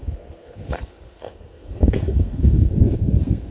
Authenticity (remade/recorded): remade